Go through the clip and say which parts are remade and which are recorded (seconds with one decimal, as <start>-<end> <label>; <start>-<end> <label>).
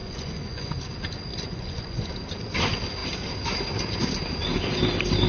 0.0-0.7 remade; 0.7-1.3 recorded; 1.3-2.1 remade; 2.1-5.3 recorded